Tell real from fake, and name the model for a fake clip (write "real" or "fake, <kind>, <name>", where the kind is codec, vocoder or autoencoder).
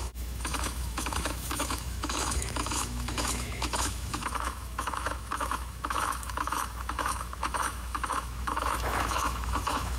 fake, autoencoder, DAC-VAE